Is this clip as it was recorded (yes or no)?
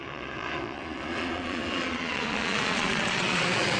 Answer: no